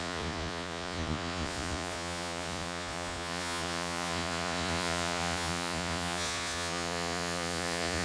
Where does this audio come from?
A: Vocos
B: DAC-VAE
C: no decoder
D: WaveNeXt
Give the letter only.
A